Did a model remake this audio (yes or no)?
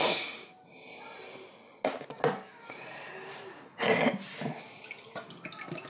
no